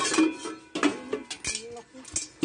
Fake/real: real